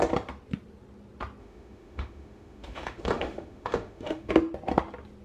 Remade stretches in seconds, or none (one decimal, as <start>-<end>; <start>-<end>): 1.4-4.3